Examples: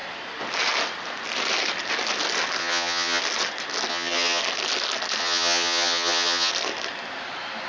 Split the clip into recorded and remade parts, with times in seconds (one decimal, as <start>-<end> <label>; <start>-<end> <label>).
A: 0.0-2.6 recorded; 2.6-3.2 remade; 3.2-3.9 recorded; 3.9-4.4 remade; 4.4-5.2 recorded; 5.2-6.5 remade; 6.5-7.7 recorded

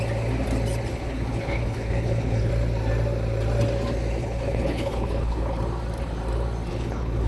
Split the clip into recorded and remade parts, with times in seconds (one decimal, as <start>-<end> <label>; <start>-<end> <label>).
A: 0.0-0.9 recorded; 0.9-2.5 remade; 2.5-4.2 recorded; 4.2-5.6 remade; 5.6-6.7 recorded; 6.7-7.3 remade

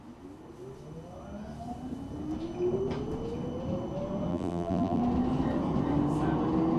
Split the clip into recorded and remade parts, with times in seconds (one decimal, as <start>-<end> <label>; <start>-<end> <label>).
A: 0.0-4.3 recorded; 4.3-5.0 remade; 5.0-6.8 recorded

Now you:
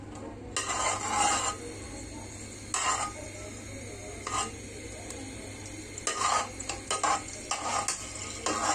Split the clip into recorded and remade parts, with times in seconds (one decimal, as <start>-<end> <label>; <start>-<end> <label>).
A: 0.0-8.7 recorded

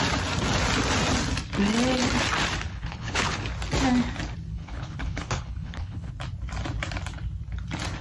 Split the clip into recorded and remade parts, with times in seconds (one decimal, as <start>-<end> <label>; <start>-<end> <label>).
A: 0.0-2.7 recorded; 2.7-3.4 remade; 3.4-4.5 recorded; 4.5-6.1 remade; 6.1-8.0 recorded

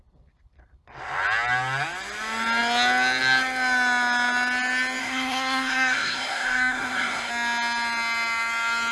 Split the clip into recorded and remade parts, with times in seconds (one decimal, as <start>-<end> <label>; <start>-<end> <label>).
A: 0.0-5.0 recorded; 5.0-7.3 remade; 7.3-8.9 recorded